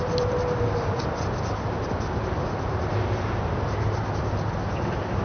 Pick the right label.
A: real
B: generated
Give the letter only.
A